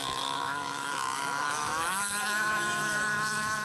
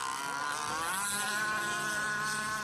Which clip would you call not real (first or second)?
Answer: first